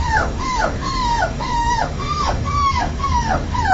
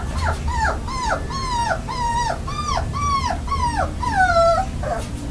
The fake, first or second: first